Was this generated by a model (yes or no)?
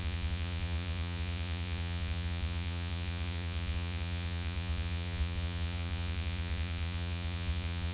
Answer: yes